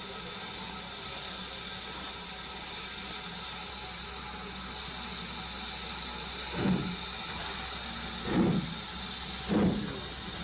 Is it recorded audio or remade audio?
recorded